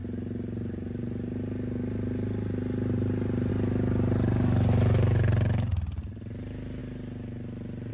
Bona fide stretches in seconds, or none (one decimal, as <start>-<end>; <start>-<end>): 0.0-7.9